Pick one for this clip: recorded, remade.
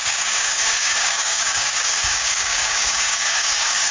remade